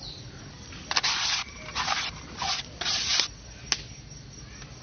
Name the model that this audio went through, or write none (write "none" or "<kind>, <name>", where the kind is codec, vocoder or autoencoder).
none